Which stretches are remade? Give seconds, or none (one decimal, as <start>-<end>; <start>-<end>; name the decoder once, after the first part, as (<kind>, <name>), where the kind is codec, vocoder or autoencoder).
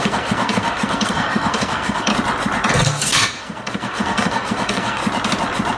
0.0-2.1 (codec, SNAC); 2.7-5.0